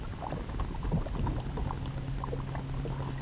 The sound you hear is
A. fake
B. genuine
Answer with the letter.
B